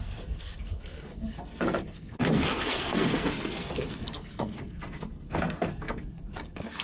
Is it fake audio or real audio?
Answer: fake